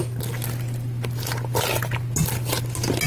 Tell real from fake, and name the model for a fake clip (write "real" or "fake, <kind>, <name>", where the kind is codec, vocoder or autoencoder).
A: real